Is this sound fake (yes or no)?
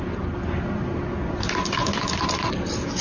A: no